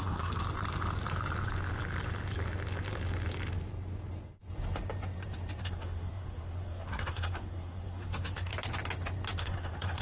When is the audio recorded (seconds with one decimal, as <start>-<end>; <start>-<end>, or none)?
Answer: 0.4-5.6; 8.5-9.4